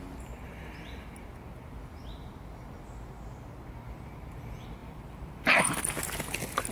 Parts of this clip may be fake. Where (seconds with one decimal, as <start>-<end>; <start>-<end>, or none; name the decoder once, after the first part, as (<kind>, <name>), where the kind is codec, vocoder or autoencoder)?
4.8-5.8 (vocoder, BigVGAN v2)